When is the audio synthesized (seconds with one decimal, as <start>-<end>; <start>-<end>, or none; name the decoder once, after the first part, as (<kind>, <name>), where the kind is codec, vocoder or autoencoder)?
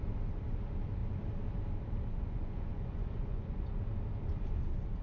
2.1-3.7 (vocoder, Vocos)